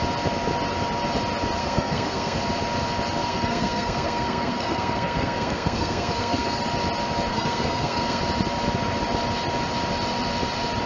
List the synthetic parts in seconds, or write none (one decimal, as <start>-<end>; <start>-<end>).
1.6-2.4; 3.2-6.6; 7.3-8.2